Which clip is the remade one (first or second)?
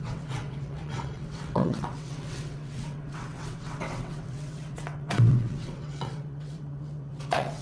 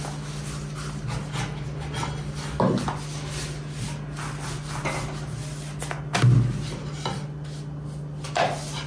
first